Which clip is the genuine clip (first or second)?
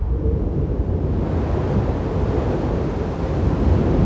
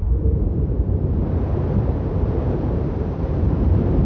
first